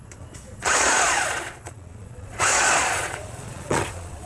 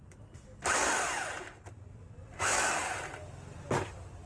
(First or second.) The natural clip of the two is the second